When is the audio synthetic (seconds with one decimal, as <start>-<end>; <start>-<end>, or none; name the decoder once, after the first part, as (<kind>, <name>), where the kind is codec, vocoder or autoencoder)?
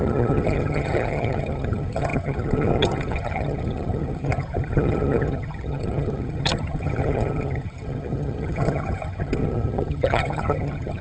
0.0-11.0 (vocoder, HiFi-GAN)